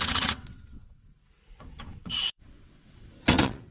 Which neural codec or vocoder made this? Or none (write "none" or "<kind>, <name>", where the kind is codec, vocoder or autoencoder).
vocoder, WaveNeXt